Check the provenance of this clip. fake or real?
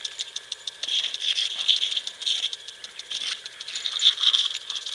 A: fake